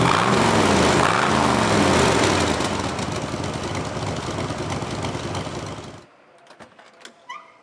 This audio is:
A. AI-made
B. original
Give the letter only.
B